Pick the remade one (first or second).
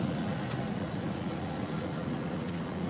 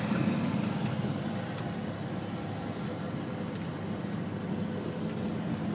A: first